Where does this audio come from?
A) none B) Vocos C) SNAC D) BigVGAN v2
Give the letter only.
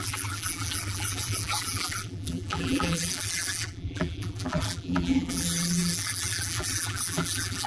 D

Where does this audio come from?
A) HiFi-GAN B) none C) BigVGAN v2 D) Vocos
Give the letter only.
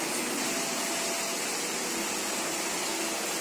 B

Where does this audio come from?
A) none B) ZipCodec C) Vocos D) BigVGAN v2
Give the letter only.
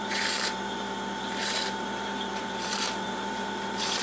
D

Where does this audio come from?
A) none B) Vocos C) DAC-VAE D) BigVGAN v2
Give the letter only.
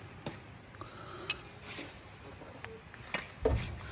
A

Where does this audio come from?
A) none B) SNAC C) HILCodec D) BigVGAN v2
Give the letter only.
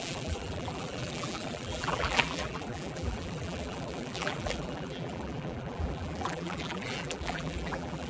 D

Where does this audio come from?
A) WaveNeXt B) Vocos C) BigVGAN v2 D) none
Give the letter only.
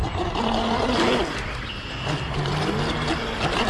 D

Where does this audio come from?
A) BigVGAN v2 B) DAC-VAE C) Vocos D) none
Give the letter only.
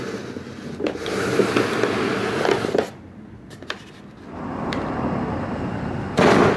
D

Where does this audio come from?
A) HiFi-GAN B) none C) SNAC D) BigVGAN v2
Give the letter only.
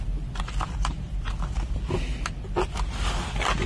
B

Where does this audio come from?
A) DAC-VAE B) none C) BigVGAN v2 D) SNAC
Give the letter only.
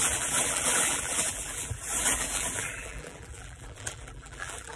C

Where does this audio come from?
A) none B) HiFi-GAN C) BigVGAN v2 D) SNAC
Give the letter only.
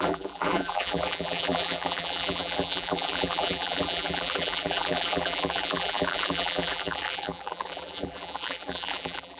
C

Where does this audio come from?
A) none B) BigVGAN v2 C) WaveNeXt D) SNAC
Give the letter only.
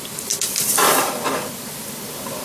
B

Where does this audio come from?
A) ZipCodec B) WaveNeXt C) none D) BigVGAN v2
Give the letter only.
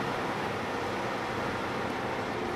C